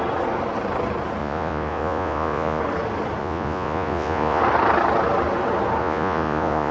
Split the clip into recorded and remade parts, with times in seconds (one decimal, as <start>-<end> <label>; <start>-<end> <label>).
0.0-1.2 recorded; 1.2-2.6 remade; 2.6-3.2 recorded; 3.2-4.4 remade; 4.4-5.8 recorded; 5.8-6.7 remade